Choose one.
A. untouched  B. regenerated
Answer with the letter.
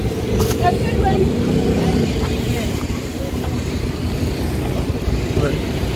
B